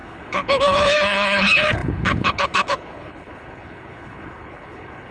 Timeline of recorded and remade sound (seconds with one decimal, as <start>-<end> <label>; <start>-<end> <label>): 0.0-5.1 remade